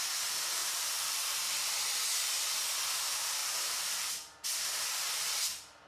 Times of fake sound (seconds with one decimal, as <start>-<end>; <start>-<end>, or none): 0.6-1.7; 3.4-4.1